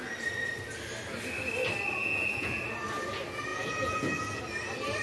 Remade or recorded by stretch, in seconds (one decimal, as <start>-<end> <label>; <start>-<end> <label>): 0.0-2.0 recorded; 2.0-2.6 remade; 2.6-3.5 recorded; 3.5-4.4 remade; 4.4-5.0 recorded